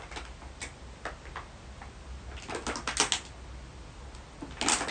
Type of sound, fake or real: real